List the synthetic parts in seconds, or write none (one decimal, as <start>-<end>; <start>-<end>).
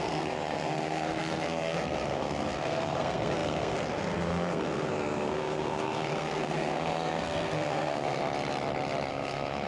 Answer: 0.0-8.2; 9.1-9.7